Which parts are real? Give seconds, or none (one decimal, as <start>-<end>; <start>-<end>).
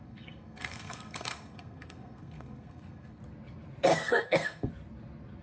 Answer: 3.2-3.9; 4.7-5.4